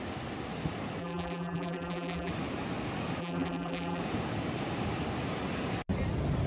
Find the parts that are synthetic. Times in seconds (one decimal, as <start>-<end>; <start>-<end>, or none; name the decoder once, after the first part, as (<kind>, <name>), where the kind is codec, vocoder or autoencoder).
1.0-2.3 (vocoder, BigVGAN v2); 3.2-4.0